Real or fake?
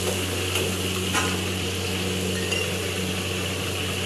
real